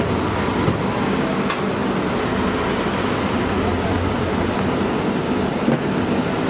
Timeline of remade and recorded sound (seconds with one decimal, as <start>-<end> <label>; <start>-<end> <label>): 0.0-6.5 recorded